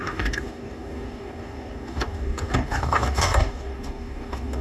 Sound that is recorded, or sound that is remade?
remade